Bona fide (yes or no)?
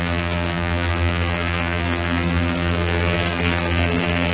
no